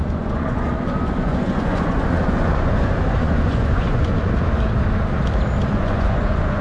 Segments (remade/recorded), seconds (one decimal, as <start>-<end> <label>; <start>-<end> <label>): 0.0-4.1 remade; 4.1-5.7 recorded; 5.7-6.6 remade